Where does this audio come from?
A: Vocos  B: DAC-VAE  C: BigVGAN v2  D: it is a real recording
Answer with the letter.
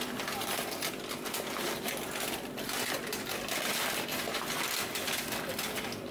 D